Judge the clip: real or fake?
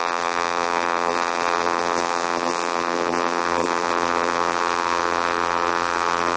fake